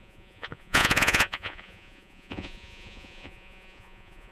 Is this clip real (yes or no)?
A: no